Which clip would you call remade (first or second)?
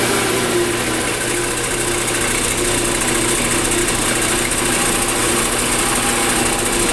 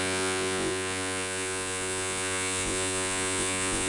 second